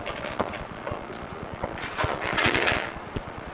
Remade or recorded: remade